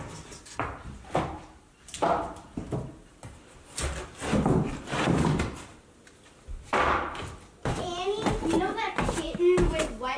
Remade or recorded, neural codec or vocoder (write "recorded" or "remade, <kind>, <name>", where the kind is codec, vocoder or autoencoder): recorded